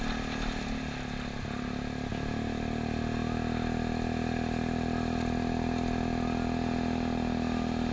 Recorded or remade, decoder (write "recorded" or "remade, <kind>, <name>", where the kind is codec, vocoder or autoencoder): recorded